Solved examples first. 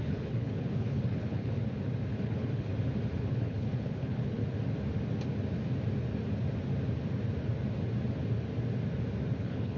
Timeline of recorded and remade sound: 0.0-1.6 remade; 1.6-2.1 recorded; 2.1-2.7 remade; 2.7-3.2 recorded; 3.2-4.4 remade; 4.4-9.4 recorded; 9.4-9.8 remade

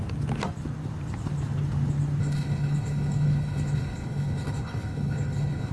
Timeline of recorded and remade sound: 0.0-2.2 recorded; 2.2-5.7 remade

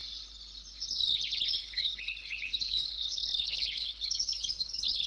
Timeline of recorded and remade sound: 0.0-1.6 recorded; 1.6-5.1 remade